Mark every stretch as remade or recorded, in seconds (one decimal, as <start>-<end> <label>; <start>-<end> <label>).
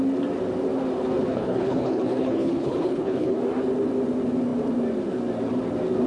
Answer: 0.0-1.3 recorded; 1.3-3.4 remade; 3.4-6.1 recorded